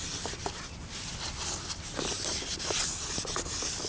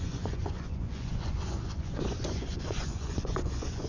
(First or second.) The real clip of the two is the first